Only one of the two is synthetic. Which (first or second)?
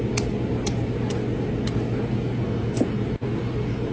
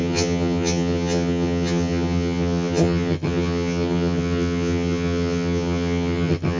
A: second